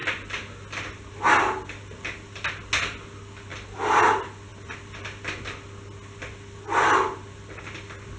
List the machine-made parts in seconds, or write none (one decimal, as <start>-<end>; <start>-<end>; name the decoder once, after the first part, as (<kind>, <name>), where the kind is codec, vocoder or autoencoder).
none